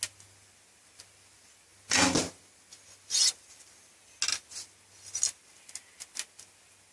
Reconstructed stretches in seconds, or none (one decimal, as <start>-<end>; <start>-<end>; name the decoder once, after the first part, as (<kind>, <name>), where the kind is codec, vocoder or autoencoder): none